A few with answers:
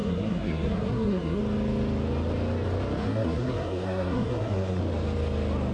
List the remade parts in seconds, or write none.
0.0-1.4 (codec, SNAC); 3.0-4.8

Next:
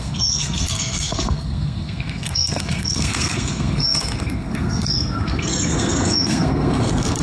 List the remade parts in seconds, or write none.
0.0-7.2 (codec, SNAC)

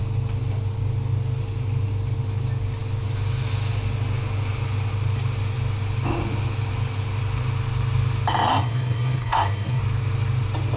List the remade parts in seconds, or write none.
8.5-9.8 (codec, SNAC)

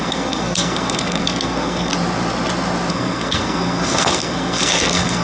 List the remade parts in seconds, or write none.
0.0-1.9 (codec, SNAC); 2.9-5.2